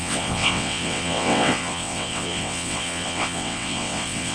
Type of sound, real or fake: fake